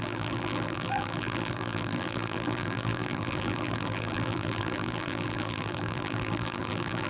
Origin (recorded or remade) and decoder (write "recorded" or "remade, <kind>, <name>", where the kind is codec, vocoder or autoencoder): remade, vocoder, BigVGAN v2